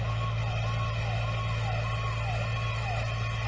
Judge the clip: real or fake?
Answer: real